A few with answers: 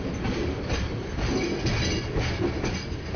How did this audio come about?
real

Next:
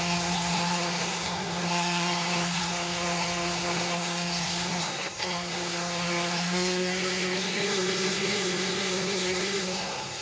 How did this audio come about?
fake